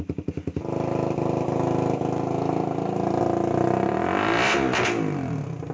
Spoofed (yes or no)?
no